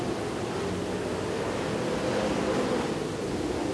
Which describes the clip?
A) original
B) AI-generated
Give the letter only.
A